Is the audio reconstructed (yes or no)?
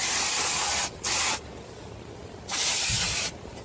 yes